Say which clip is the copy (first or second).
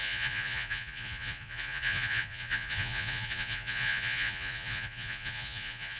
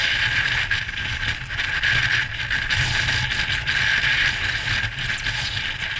first